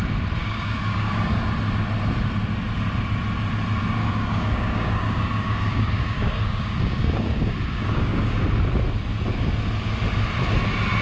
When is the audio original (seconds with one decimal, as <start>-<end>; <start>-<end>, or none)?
0.0-0.4; 1.4-4.0; 8.6-11.0